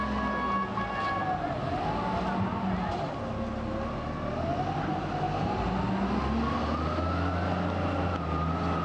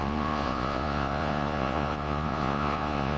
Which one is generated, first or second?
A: second